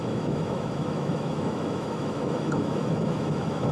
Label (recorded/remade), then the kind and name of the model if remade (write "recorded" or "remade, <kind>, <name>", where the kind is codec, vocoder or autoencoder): remade, autoencoder, DAC-VAE